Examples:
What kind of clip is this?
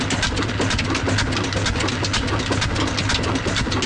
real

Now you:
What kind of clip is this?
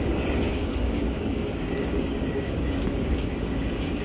fake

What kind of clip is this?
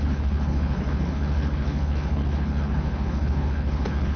fake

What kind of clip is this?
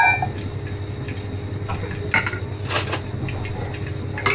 real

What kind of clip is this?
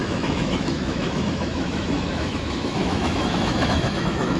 fake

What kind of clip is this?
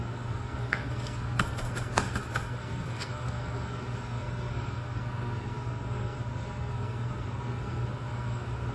fake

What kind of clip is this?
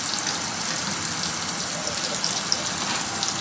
real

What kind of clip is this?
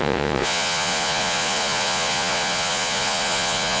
fake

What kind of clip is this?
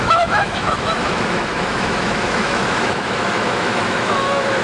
fake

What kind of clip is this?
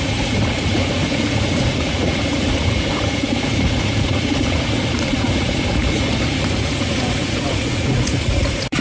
fake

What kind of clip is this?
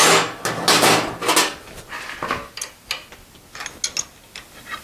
real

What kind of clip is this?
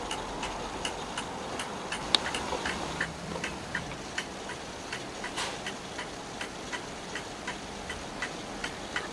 fake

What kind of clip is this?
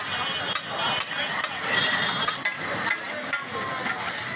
real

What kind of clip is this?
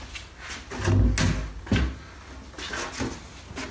real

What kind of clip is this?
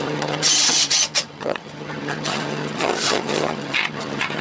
fake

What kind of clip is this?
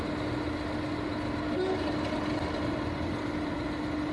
real